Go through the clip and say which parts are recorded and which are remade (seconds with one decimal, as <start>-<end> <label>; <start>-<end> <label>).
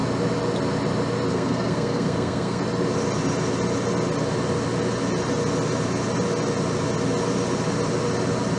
0.0-1.3 recorded; 1.3-2.6 remade; 2.6-8.6 recorded